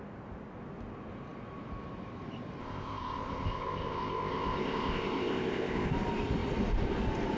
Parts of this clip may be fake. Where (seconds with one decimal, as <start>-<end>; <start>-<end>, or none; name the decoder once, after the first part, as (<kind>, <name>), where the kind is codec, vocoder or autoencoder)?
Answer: 2.6-5.9 (codec, ZipCodec)